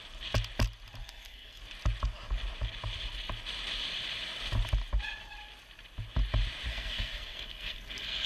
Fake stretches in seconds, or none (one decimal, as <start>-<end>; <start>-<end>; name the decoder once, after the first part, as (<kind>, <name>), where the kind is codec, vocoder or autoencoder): 1.0-1.6 (codec, SNAC); 6.7-8.3